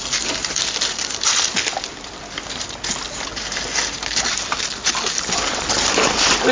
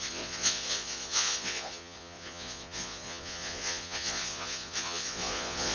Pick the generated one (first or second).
second